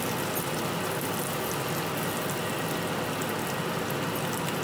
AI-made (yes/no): no